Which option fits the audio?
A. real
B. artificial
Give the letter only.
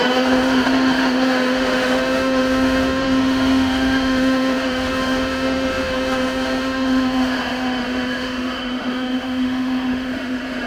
B